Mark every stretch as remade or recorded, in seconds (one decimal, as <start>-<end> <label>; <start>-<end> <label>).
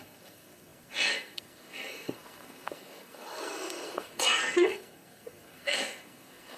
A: 0.0-6.6 remade